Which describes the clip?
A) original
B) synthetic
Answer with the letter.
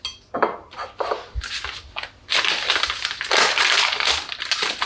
A